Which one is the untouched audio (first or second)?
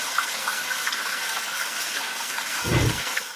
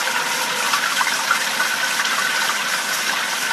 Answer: second